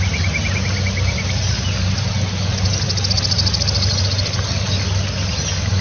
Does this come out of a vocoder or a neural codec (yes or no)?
no